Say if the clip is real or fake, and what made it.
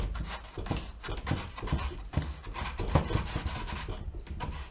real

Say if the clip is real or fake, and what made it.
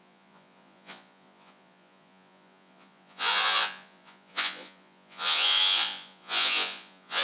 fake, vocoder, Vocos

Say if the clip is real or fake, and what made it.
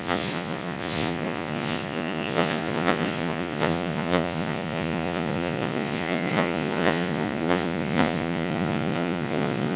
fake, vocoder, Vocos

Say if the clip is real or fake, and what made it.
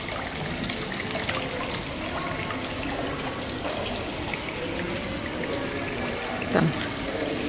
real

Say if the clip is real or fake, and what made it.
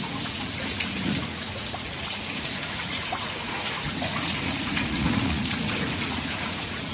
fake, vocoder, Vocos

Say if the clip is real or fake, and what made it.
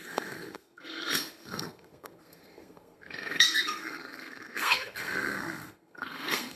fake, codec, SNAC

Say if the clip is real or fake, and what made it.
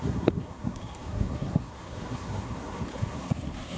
fake, codec, SNAC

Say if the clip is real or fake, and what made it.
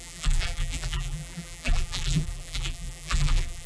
fake, vocoder, BigVGAN v2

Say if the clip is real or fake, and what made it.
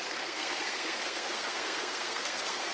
fake, codec, SNAC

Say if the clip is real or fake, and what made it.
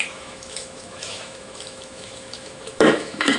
fake, autoencoder, DAC-VAE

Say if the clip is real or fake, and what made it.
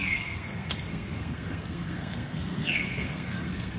fake, codec, SNAC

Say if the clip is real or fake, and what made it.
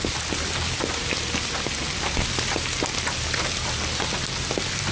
real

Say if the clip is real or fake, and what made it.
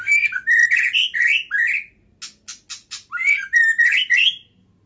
real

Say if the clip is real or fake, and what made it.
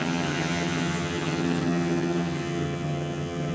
fake, vocoder, HiFi-GAN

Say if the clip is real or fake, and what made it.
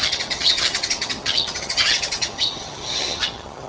fake, vocoder, HiFi-GAN